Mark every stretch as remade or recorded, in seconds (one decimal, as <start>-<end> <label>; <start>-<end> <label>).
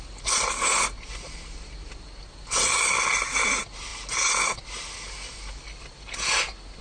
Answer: 0.0-6.8 recorded